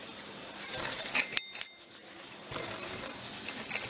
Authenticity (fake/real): real